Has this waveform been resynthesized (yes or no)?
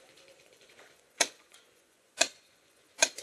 yes